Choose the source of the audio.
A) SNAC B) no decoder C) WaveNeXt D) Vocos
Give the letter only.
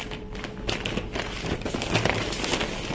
B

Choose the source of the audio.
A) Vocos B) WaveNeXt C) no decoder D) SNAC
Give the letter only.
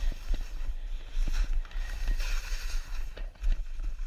C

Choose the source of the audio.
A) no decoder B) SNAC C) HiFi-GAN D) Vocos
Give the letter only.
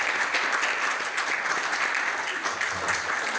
A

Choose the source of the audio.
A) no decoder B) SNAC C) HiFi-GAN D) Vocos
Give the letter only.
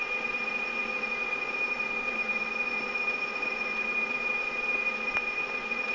D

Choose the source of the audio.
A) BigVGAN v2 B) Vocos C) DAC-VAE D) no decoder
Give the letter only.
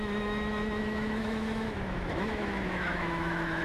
C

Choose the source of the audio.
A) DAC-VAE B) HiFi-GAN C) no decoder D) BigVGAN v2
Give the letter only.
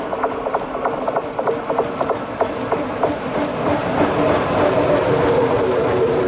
C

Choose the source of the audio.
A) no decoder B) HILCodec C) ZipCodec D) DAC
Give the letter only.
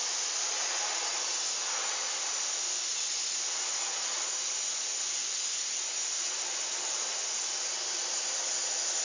A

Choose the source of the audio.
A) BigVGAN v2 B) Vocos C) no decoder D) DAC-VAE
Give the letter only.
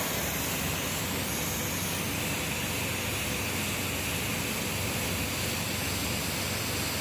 C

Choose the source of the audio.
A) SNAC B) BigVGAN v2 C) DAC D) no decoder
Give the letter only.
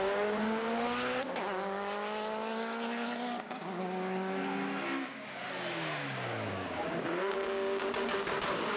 C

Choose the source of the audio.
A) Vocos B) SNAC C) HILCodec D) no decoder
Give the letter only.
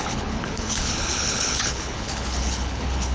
C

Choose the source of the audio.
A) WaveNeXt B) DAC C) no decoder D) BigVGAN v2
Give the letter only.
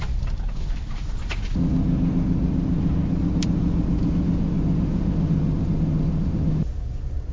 C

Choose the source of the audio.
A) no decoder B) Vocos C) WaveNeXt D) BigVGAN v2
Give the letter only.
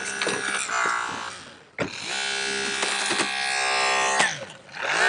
A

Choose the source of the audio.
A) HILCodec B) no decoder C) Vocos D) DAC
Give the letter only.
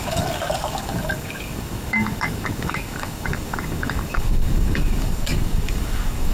D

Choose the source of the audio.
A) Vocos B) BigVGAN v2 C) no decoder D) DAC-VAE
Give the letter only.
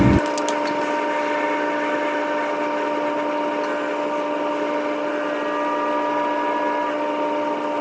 C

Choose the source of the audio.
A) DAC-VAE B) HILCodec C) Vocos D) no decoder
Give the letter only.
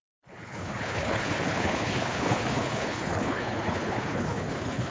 B